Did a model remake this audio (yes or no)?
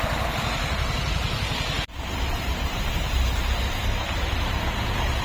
yes